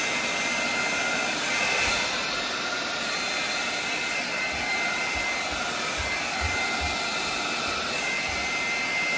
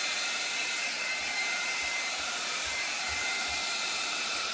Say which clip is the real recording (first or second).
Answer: first